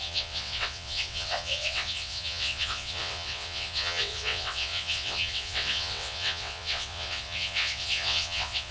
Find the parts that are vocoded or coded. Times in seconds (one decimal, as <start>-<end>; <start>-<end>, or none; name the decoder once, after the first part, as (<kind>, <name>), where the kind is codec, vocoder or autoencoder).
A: 0.0-8.7 (vocoder, WaveNeXt)